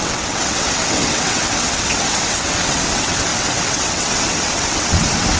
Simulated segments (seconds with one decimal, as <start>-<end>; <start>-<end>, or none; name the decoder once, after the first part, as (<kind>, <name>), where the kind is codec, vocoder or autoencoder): 0.0-5.4 (vocoder, WaveNeXt)